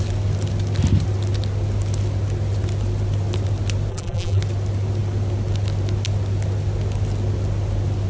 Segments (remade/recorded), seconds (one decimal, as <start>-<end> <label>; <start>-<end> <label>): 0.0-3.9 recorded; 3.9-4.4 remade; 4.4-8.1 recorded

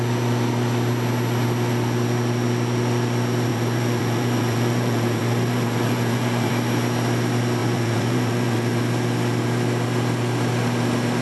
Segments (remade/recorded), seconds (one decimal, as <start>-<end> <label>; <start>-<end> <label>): 0.0-3.5 recorded; 3.5-6.5 remade; 6.5-7.6 recorded; 7.6-8.8 remade; 8.8-11.2 recorded

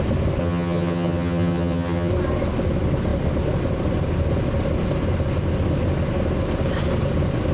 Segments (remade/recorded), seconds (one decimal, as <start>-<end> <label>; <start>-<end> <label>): 0.0-0.4 recorded; 0.4-2.1 remade; 2.1-7.5 recorded

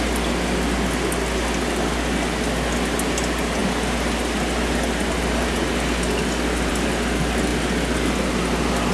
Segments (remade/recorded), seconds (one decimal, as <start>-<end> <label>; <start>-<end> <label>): 0.0-8.9 recorded